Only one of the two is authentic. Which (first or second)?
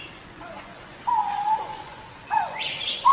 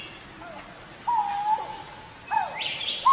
second